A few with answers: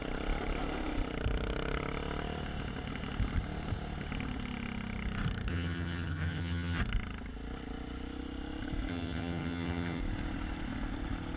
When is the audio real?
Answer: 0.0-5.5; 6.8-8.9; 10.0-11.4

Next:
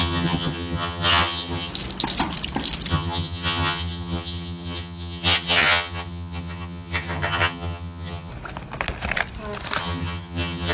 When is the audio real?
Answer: 1.7-2.9; 8.3-9.8

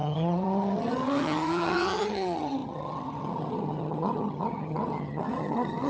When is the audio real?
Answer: none

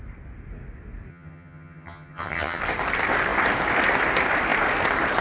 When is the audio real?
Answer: 0.0-1.1; 2.6-5.2